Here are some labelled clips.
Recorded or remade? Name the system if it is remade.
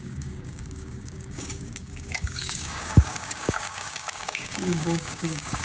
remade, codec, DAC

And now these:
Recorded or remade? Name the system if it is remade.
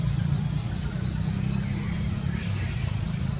recorded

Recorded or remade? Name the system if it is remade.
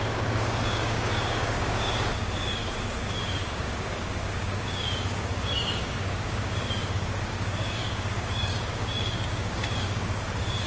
remade, codec, DAC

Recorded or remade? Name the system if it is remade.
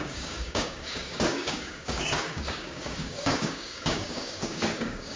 remade, codec, DAC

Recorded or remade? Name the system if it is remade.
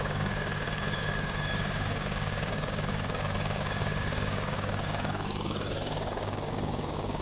remade, codec, DAC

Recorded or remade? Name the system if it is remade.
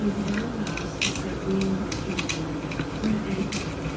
recorded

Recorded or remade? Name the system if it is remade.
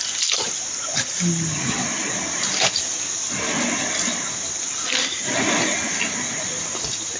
recorded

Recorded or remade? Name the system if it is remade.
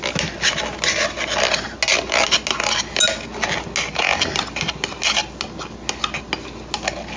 recorded